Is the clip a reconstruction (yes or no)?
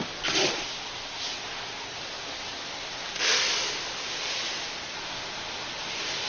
no